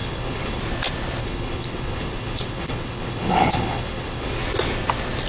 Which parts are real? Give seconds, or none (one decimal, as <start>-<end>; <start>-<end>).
0.6-1.2; 4.4-5.3